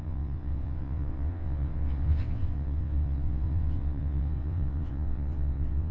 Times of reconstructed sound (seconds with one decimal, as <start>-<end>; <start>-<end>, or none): 0.0-5.9